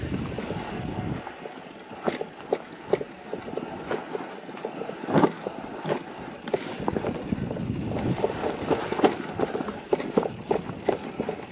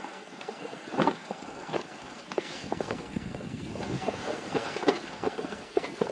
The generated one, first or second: second